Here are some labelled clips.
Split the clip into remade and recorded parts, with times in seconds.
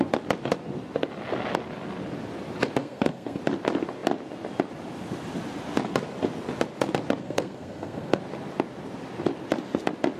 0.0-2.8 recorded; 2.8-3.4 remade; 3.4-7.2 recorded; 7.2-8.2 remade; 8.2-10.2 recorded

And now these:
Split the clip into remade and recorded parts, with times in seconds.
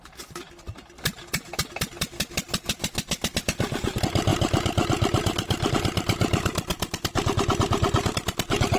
0.0-8.8 recorded